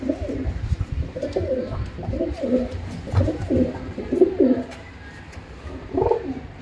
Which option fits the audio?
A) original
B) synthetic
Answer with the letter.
B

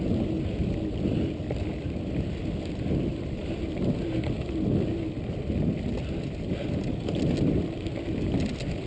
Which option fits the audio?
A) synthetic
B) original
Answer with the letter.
B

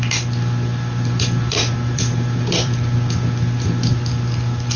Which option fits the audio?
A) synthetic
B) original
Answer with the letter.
A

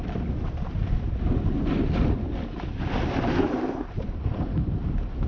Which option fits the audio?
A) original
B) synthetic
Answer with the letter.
A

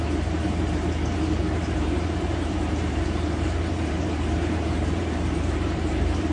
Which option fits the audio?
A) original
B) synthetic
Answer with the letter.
B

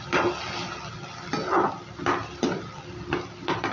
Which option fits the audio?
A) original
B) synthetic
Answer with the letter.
A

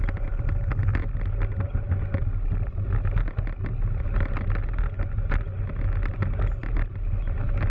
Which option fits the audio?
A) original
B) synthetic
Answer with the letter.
A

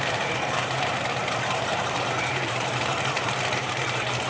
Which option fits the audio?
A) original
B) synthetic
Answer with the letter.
B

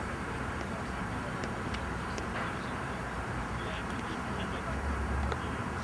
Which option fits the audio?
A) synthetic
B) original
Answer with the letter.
A